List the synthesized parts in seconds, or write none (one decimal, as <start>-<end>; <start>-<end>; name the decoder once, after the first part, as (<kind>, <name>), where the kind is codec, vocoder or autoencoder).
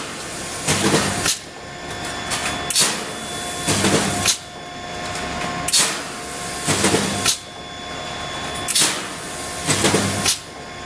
8.7-9.3 (vocoder, Vocos)